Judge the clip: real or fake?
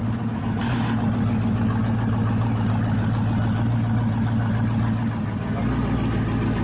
real